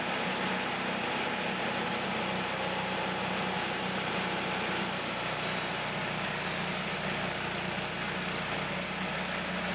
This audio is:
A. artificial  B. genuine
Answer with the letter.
B